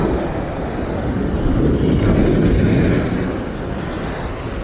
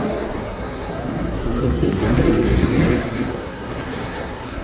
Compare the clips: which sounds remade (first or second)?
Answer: second